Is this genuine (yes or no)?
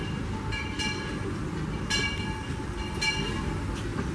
yes